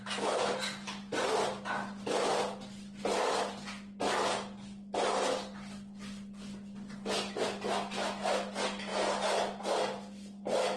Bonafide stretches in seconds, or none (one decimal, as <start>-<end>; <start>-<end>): 0.0-10.8